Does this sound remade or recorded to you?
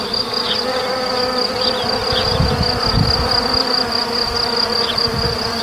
recorded